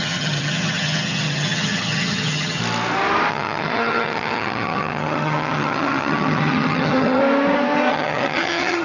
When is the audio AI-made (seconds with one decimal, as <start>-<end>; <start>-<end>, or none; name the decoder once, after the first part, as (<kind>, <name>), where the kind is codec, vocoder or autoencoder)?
0.0-2.6 (vocoder, HiFi-GAN); 3.3-7.2; 7.9-8.8